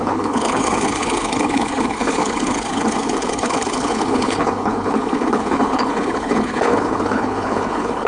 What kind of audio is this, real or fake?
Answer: fake